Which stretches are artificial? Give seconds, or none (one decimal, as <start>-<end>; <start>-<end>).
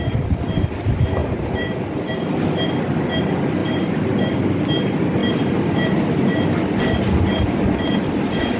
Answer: 1.2-2.2; 3.6-4.3